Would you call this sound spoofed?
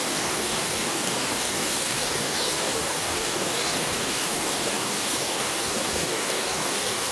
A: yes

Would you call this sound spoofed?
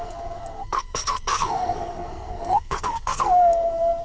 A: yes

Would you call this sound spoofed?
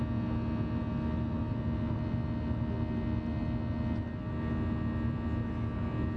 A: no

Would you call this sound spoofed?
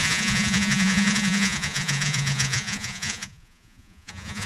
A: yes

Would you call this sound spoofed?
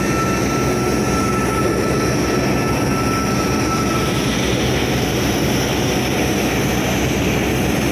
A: no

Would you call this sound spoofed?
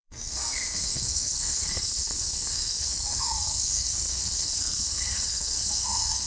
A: yes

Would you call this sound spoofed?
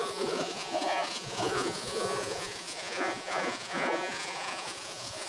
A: yes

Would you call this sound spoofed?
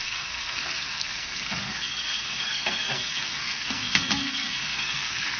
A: yes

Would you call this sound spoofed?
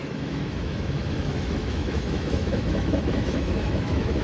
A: yes